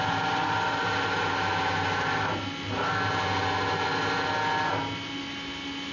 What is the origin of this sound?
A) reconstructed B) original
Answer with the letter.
B